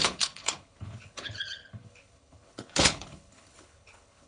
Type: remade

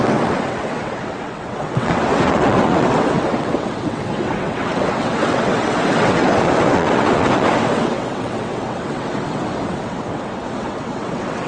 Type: remade